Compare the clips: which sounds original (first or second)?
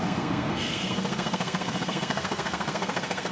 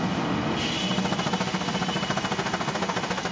second